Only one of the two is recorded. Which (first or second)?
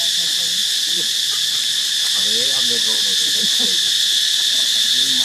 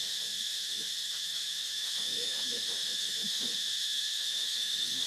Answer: first